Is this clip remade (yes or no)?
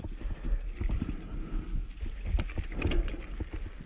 no